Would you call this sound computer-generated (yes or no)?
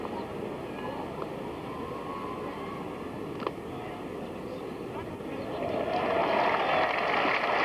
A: no